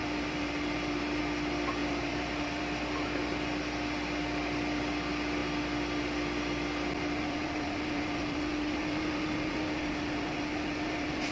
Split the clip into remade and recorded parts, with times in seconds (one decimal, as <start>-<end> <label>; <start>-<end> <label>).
0.0-1.2 remade; 1.2-1.8 recorded; 1.8-2.6 remade; 2.6-11.3 recorded